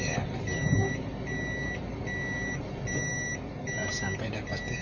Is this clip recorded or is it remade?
recorded